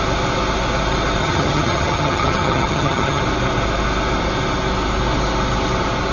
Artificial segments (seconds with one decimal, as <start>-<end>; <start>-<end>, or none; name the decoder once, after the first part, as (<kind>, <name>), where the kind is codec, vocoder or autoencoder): 1.2-3.2 (vocoder, HiFi-GAN)